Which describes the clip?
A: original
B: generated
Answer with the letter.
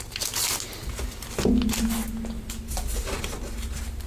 A